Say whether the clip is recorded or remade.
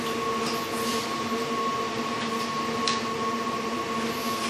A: recorded